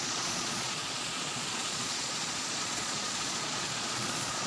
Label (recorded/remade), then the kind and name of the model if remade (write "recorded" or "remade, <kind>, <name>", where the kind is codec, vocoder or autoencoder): remade, vocoder, Vocos